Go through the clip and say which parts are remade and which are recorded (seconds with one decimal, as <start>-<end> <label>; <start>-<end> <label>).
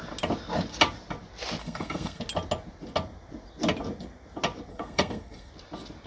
0.0-1.6 recorded; 1.6-2.2 remade; 2.2-4.7 recorded; 4.7-5.5 remade; 5.5-6.1 recorded